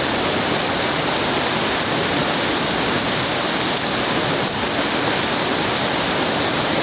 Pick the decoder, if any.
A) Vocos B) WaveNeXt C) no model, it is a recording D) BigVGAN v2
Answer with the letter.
C